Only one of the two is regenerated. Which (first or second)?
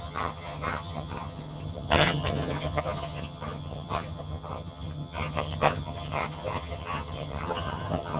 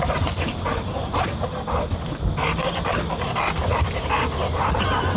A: first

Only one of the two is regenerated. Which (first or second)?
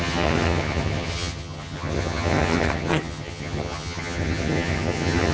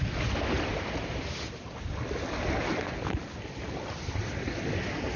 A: first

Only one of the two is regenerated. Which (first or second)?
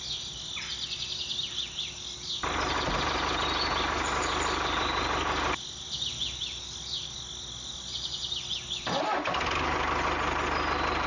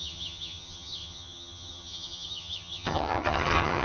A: second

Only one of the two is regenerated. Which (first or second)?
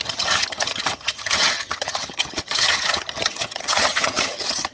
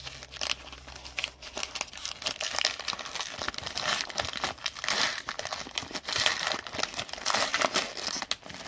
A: first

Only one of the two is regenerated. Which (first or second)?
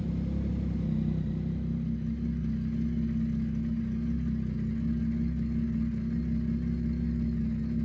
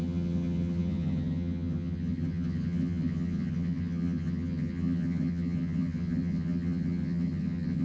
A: second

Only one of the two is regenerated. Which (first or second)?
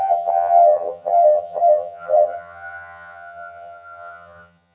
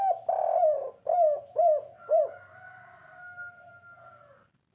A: first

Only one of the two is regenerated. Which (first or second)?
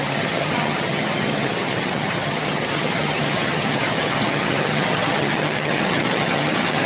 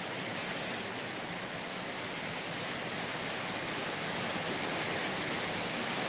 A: first